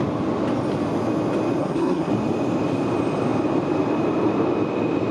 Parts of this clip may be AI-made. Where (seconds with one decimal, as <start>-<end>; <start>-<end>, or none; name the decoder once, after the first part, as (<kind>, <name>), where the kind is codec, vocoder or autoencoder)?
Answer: 1.6-2.1 (codec, SNAC)